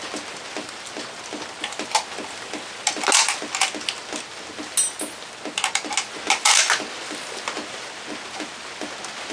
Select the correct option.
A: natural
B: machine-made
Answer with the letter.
A